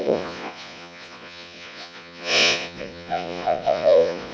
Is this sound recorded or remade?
remade